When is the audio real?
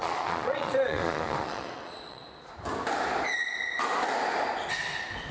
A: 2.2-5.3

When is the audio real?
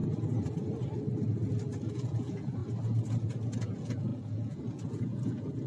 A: 0.0-1.9; 2.6-3.6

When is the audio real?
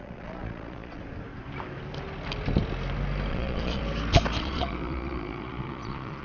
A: 1.0-3.3; 3.8-4.4